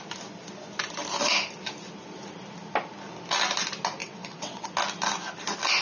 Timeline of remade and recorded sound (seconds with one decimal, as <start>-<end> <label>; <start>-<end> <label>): 0.0-4.0 recorded; 4.0-4.7 remade; 4.7-5.8 recorded